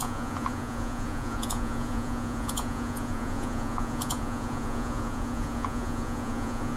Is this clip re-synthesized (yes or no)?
yes